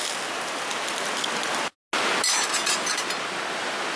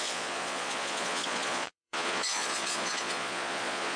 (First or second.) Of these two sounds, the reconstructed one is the second